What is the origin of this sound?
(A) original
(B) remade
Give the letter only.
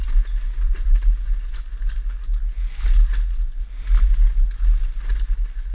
A